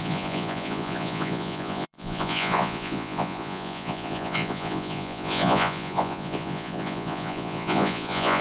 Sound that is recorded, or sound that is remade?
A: remade